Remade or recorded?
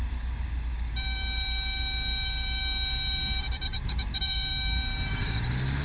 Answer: remade